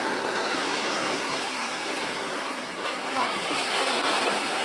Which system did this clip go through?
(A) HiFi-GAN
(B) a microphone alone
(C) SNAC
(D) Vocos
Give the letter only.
C